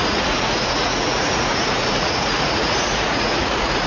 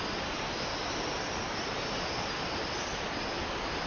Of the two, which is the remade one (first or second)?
first